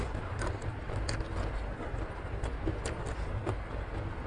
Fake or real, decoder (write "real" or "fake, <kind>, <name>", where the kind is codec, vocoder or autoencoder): real